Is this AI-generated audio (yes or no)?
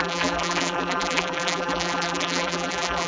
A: yes